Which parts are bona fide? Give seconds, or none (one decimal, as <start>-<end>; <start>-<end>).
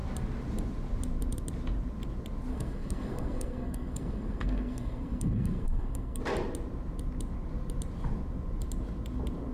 0.0-2.5; 6.2-9.5